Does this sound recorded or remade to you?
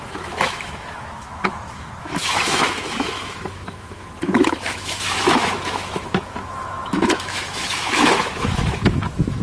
remade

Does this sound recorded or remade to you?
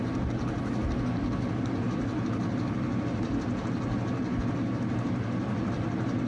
recorded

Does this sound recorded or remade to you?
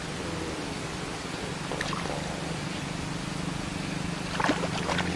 recorded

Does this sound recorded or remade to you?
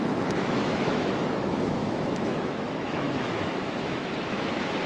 remade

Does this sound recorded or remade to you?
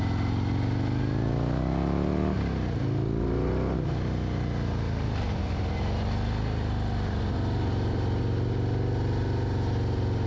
recorded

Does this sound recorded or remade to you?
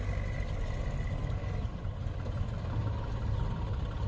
recorded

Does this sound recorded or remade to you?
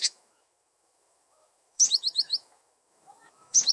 remade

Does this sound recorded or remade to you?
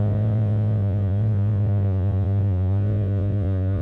remade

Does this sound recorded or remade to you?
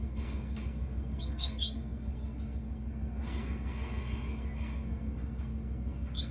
remade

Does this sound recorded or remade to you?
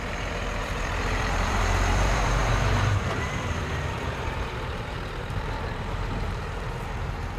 remade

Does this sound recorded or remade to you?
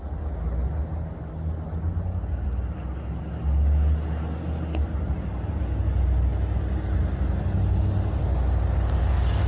recorded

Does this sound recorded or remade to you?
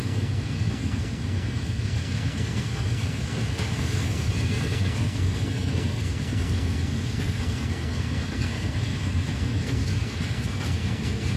remade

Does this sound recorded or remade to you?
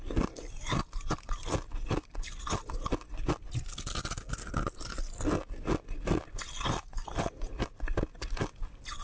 recorded